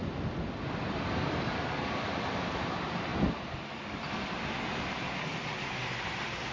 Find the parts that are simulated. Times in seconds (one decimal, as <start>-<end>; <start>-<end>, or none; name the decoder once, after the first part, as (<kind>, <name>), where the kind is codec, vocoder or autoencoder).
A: none